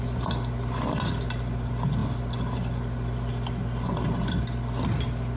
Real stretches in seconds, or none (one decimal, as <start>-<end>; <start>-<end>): 0.0-5.4